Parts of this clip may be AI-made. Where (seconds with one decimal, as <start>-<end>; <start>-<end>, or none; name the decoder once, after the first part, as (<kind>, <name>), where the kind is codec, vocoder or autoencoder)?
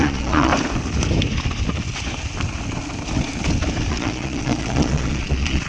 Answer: 0.0-0.5 (vocoder, Vocos); 3.9-5.7